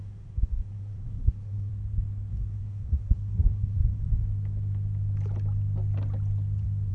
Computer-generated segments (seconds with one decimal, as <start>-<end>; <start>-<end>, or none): 0.0-1.7; 2.3-4.1